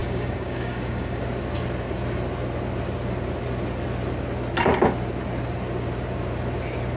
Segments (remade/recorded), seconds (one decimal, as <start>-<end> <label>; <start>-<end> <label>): 0.0-1.2 remade; 1.2-7.0 recorded